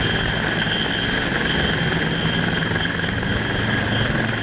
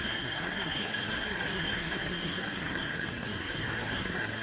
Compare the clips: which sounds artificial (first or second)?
second